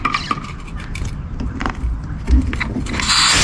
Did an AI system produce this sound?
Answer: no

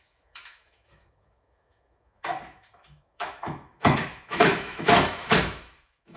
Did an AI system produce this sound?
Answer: yes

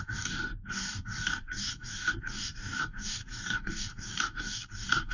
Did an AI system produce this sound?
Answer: yes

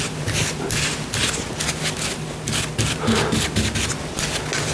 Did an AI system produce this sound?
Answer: no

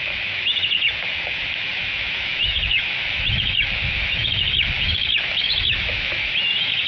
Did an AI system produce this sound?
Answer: yes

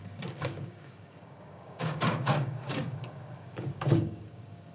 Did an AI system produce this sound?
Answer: yes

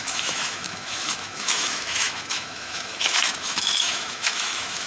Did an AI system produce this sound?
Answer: yes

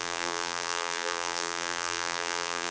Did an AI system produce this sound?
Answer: yes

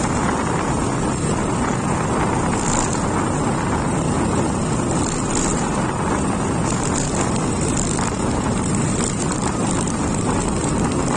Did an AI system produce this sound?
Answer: no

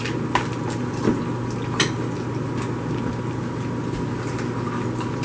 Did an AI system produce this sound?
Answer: no